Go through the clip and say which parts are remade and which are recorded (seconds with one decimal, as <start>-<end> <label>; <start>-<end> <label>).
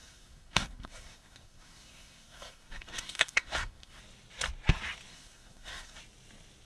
0.0-4.0 remade; 4.0-5.1 recorded; 5.1-6.0 remade; 6.0-6.7 recorded